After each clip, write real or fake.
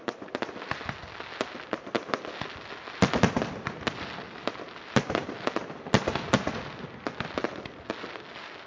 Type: real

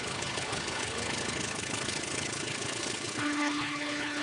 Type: fake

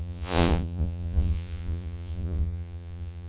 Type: fake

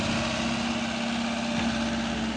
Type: real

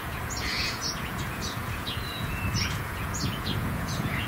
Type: fake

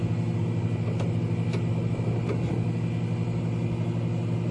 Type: real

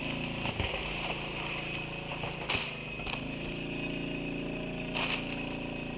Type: real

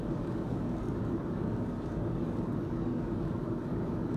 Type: fake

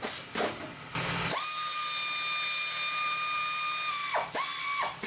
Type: real